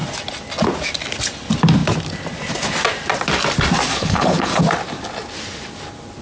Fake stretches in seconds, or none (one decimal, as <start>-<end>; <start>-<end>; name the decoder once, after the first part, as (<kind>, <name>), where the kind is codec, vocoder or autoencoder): 3.9-4.6 (codec, HILCodec)